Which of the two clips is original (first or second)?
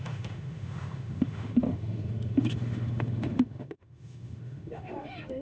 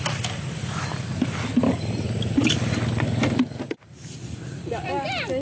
second